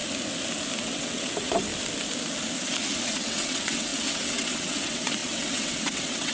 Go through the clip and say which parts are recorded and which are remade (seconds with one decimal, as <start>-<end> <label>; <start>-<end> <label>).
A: 0.0-0.8 recorded; 0.8-1.7 remade; 1.7-3.1 recorded; 3.1-6.3 remade